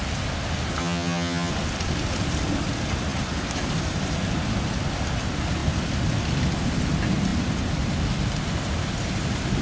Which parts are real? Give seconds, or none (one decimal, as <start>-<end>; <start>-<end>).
0.0-0.8; 1.5-9.6